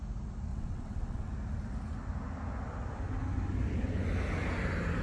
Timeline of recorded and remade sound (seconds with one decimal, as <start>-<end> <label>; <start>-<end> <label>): 0.0-0.5 recorded; 0.5-1.3 remade; 1.3-5.0 recorded

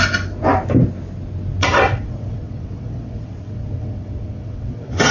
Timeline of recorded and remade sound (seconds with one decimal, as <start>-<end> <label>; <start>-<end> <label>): 0.0-1.6 recorded; 1.6-5.1 remade

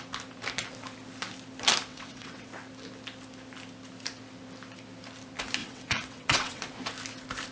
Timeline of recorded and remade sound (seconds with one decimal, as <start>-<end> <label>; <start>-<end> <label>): 0.0-1.9 recorded; 1.9-2.5 remade; 2.5-5.6 recorded; 5.6-6.6 remade; 6.6-7.5 recorded

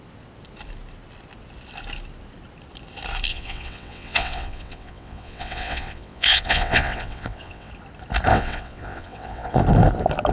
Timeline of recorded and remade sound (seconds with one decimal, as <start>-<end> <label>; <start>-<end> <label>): 0.0-3.3 recorded; 3.3-7.7 remade; 7.7-8.3 recorded; 8.3-9.6 remade; 9.6-10.3 recorded

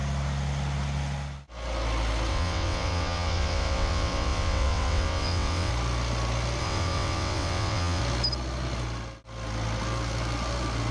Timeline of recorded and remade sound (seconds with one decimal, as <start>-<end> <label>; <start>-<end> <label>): 0.0-2.3 recorded; 2.3-5.7 remade; 5.7-6.6 recorded; 6.6-8.0 remade; 8.0-10.9 recorded

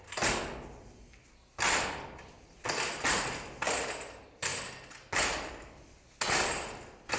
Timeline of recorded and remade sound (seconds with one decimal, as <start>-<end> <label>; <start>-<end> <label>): 0.0-7.2 recorded

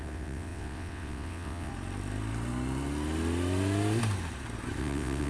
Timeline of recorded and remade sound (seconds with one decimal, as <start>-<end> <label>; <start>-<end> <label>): 0.0-1.7 remade; 1.7-4.8 recorded; 4.8-5.3 remade

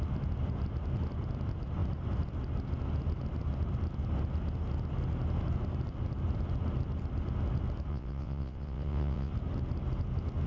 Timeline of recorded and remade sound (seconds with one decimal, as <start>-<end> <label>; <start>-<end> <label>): 0.0-7.9 recorded; 7.9-9.3 remade; 9.3-10.5 recorded